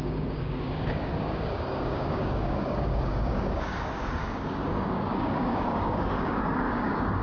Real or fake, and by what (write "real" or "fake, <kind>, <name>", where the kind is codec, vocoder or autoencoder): fake, codec, DAC